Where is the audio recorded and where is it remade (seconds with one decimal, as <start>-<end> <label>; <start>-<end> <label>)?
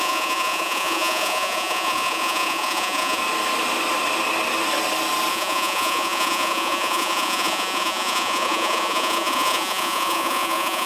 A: 0.0-3.2 remade; 3.2-5.3 recorded; 5.3-10.9 remade